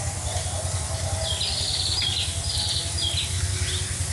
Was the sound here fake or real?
real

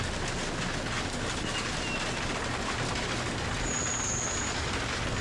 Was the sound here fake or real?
real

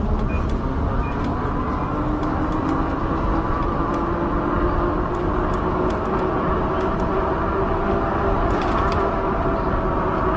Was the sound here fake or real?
real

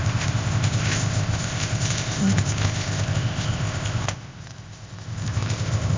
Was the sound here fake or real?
fake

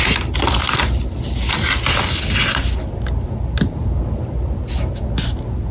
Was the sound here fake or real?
real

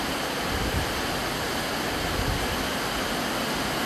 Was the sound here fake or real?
real